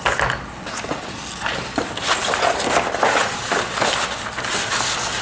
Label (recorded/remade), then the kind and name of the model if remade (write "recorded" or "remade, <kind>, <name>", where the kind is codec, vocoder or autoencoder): recorded